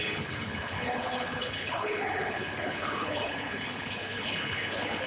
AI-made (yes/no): yes